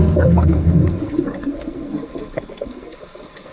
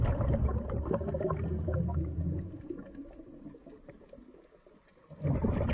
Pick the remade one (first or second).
first